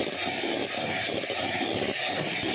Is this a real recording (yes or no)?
yes